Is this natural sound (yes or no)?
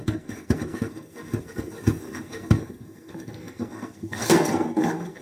no